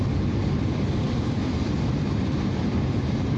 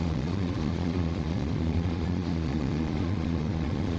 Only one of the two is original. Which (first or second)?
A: first